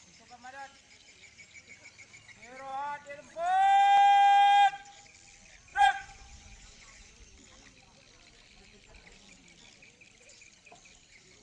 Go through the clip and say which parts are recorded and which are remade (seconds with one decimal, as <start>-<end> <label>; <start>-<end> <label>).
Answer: 0.0-5.7 recorded; 5.7-7.1 remade; 7.1-11.4 recorded